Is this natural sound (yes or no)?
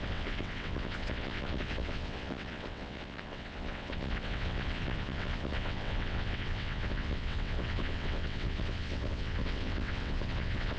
no